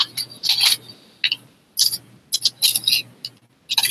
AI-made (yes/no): no